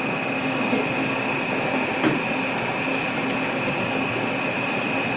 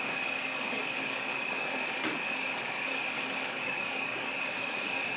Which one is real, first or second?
first